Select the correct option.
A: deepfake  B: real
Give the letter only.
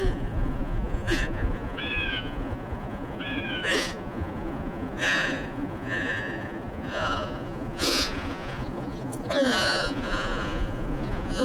A